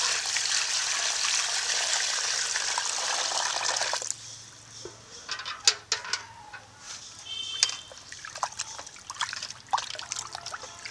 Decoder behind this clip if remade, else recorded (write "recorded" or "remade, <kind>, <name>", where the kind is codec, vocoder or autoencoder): recorded